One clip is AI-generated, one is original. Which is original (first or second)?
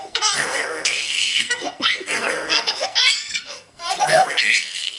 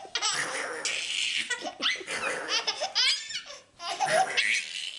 second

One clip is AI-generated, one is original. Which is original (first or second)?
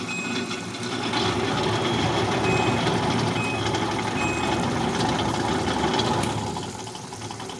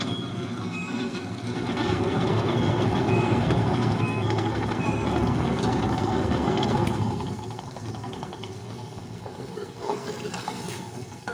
first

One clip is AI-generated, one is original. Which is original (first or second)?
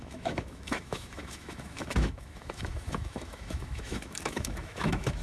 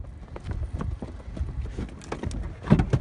second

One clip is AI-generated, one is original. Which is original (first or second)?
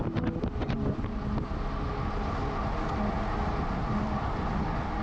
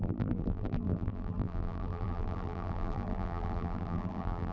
first